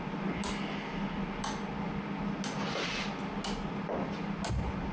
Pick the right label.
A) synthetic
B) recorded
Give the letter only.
B